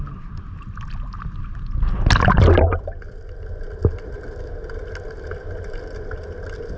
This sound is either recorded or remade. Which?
recorded